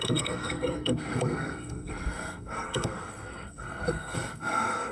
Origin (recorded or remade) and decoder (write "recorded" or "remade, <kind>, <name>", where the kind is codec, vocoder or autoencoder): remade, codec, SNAC